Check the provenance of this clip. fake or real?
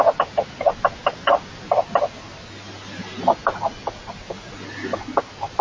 real